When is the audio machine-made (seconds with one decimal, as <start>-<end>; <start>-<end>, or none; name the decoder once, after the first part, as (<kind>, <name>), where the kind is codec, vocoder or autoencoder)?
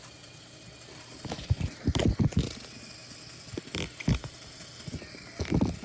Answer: none